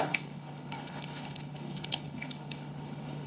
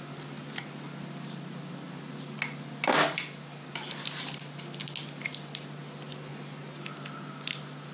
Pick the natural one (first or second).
second